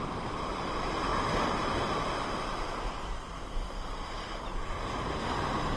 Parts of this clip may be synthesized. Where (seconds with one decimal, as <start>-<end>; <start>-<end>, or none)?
1.1-4.5